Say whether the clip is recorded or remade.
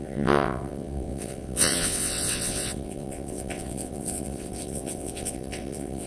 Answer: remade